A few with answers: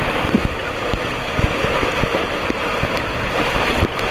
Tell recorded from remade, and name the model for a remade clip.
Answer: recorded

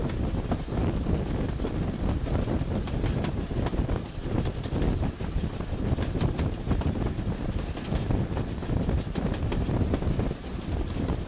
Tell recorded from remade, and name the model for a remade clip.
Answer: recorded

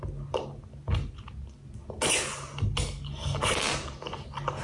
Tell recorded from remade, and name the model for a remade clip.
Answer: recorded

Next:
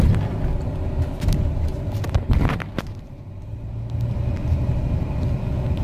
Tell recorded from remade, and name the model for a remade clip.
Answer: recorded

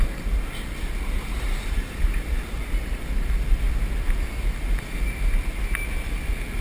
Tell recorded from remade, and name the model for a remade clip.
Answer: recorded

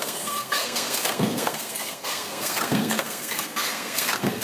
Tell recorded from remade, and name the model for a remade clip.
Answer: remade, codec, SNAC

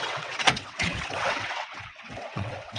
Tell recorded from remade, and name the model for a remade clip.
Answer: remade, vocoder, WaveNeXt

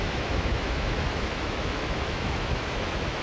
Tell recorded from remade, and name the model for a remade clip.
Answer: remade, autoencoder, DAC-VAE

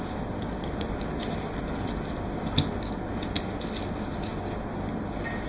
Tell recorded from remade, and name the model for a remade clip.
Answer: recorded